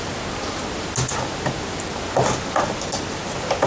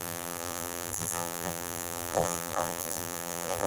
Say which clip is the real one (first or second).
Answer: first